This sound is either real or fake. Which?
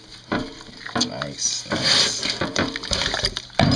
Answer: real